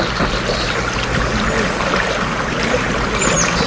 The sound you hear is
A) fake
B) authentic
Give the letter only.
B